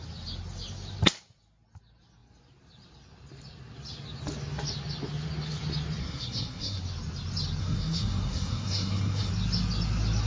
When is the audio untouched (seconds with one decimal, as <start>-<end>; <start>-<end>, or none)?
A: 0.0-6.0; 6.8-7.6; 9.3-10.3